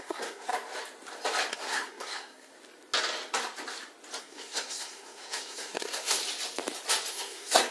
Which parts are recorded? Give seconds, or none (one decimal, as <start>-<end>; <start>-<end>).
0.5-1.5; 2.5-4.2; 6.2-7.1